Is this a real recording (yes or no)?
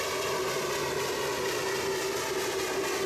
yes